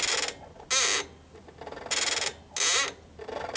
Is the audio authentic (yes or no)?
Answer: yes